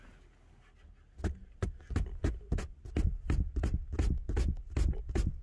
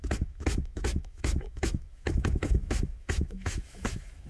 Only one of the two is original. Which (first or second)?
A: first